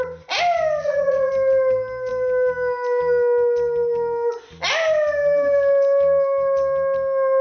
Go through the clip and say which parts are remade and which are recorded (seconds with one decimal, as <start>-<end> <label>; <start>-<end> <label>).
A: 0.0-0.8 recorded; 0.8-1.3 remade; 1.3-7.4 recorded